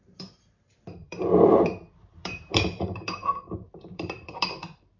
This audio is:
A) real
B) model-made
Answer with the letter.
B